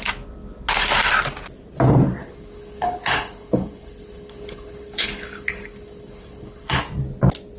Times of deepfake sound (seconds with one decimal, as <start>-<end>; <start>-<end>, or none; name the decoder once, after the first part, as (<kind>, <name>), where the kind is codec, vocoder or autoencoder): 2.2-6.8 (codec, HILCodec)